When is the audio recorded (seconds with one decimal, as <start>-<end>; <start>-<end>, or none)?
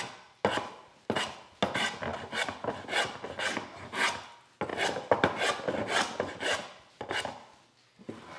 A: 0.0-8.4